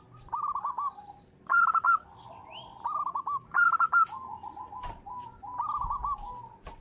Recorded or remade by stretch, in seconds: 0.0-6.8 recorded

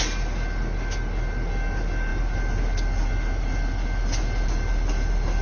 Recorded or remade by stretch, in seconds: 0.0-5.4 recorded